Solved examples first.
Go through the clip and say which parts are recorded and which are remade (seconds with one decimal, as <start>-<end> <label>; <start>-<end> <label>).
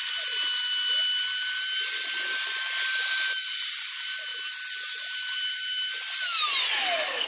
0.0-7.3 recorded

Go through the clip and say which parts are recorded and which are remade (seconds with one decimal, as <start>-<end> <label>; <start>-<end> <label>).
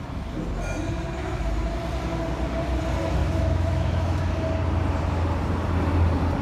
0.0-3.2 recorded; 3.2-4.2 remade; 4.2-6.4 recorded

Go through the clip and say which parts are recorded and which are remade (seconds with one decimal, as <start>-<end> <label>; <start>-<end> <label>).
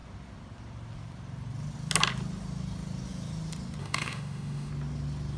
0.0-3.8 recorded; 3.8-4.7 remade; 4.7-5.4 recorded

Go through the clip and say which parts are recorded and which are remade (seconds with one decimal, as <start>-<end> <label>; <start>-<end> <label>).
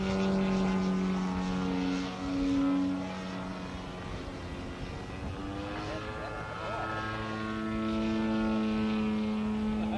0.0-10.0 recorded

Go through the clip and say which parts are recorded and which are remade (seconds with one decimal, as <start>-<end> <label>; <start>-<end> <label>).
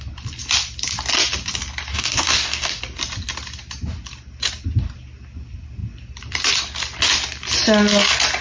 0.0-1.9 recorded; 1.9-2.8 remade; 2.8-8.4 recorded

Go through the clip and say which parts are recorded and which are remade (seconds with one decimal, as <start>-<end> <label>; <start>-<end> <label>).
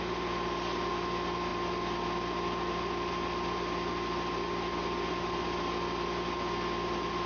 0.0-7.3 recorded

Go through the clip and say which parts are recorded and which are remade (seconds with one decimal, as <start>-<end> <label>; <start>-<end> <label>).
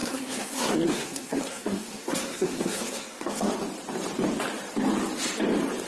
0.0-3.5 remade; 3.5-5.9 recorded